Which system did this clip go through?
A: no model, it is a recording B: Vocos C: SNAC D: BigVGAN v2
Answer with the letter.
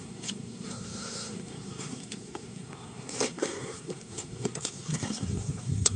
C